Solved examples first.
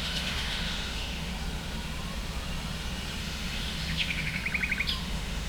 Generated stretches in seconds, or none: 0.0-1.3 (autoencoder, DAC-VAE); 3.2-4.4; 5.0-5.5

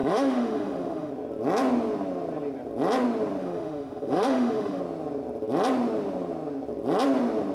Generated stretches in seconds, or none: 0.0-1.1 (autoencoder, DAC-VAE); 3.4-4.8

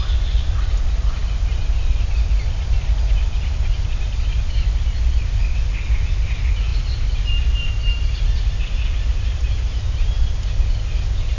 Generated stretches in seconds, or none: none

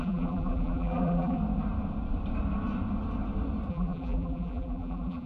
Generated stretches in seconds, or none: 0.0-1.4 (vocoder, BigVGAN v2); 3.7-5.3

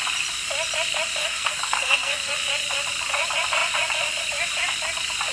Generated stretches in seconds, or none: 1.2-2.3 (codec, SNAC)

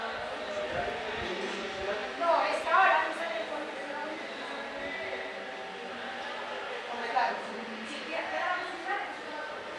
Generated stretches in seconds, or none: none